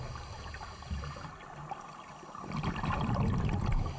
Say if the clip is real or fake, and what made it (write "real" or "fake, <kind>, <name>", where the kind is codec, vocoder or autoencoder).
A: real